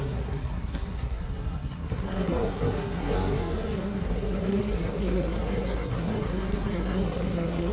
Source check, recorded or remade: remade